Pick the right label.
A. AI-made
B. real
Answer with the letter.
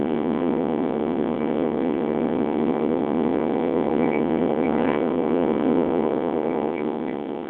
A